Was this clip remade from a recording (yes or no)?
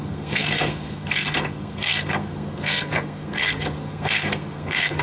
yes